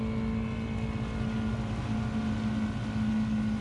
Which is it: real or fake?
real